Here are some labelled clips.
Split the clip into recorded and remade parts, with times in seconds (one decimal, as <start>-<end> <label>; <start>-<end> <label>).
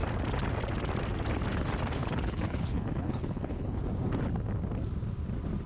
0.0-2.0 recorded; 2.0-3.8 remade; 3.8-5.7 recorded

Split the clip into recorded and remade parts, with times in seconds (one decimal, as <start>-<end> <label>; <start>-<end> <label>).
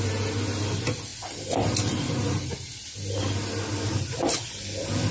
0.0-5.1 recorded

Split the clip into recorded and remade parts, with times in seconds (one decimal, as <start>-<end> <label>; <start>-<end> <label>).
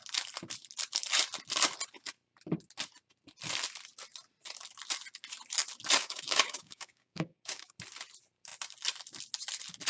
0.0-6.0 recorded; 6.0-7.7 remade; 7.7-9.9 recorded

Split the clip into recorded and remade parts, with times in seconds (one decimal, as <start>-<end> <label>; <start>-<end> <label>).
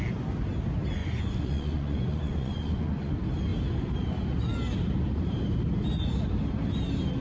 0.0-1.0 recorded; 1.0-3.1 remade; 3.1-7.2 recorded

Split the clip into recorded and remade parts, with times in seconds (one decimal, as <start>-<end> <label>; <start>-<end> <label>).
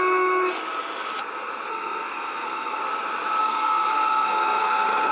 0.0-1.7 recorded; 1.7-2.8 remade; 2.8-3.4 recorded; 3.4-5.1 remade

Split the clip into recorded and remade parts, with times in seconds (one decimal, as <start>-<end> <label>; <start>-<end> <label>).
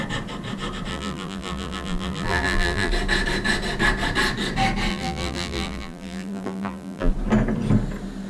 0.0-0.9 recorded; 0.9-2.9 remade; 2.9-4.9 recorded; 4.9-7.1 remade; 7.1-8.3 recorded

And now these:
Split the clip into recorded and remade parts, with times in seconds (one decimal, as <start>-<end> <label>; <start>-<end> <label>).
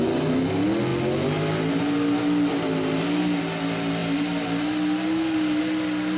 0.0-6.2 recorded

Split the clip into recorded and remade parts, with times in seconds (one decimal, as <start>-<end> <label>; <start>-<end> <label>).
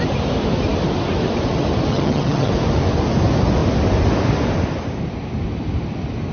0.0-1.9 recorded; 1.9-2.5 remade; 2.5-6.3 recorded